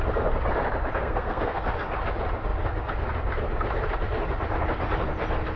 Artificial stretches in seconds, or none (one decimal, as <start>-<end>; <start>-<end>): 1.0-1.6